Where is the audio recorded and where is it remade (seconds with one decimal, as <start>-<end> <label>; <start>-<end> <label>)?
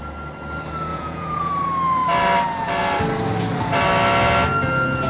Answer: 0.0-0.9 recorded; 0.9-1.5 remade; 1.5-5.1 recorded